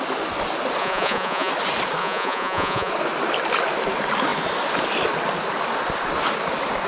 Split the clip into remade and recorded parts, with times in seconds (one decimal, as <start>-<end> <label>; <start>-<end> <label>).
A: 0.0-0.8 recorded; 0.8-1.5 remade; 1.5-2.0 recorded; 2.0-2.9 remade; 2.9-6.9 recorded